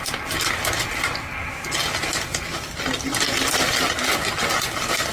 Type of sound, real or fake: real